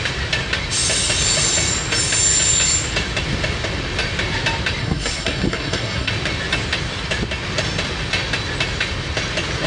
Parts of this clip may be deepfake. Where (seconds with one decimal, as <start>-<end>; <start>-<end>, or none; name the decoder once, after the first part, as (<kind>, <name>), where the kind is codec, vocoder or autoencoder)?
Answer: 4.8-6.1 (codec, SNAC)